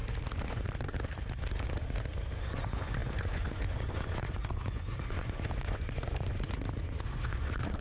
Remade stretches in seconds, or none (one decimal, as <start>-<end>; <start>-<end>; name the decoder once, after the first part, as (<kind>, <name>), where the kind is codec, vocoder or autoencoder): 0.5-0.9 (vocoder, Vocos); 2.4-7.8